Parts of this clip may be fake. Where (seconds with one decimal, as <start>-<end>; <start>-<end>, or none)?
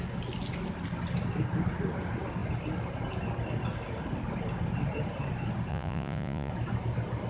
5.7-6.5